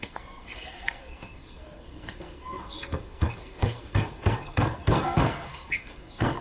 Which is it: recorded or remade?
remade